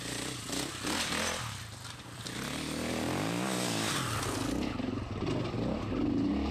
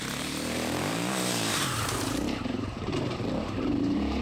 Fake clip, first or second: second